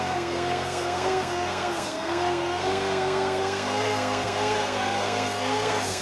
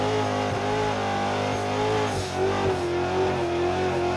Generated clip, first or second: first